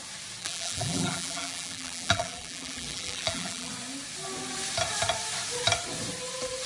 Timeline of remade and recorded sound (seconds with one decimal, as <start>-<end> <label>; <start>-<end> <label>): 0.0-0.4 recorded; 0.4-3.7 remade; 3.7-6.7 recorded

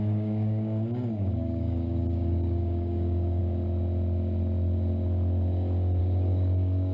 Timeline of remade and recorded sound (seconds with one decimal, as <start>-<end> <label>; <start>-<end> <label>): 0.0-3.4 remade; 3.4-6.0 recorded; 6.0-6.9 remade